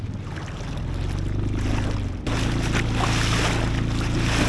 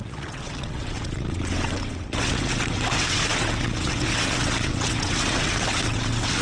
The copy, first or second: second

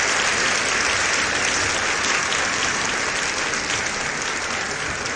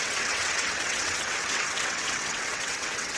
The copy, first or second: second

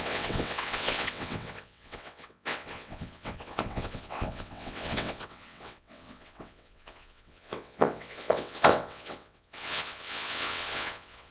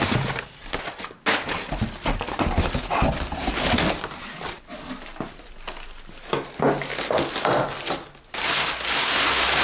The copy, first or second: first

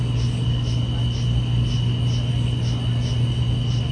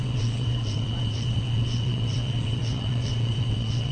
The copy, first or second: second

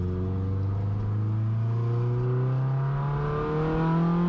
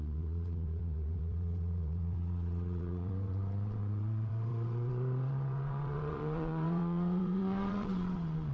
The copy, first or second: second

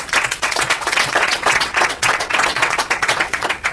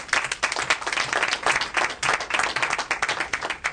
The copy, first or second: first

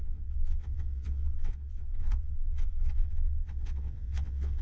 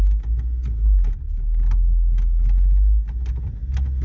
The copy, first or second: first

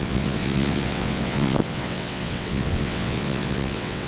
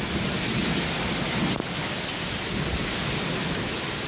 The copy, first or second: first